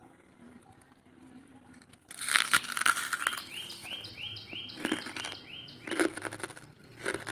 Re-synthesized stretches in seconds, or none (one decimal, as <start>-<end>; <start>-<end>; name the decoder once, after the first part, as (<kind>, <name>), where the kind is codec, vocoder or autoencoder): 0.0-2.9 (vocoder, BigVGAN v2)